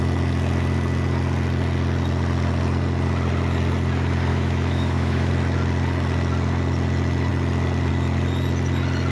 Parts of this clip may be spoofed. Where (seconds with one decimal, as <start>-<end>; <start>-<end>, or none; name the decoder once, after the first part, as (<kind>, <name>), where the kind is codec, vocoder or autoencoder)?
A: 4.3-5.3 (autoencoder, DAC-VAE)